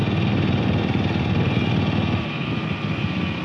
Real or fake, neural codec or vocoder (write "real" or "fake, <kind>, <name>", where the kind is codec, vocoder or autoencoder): real